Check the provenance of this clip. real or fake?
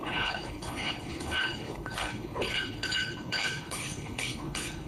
fake